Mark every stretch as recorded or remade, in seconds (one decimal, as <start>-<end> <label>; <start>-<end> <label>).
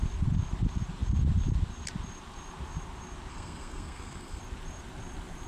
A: 0.0-3.3 recorded; 3.3-4.4 remade; 4.4-5.5 recorded